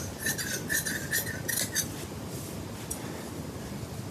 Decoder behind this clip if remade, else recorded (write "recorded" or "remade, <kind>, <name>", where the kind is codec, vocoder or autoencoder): recorded